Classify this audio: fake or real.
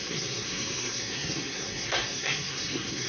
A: fake